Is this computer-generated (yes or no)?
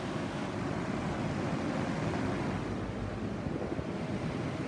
no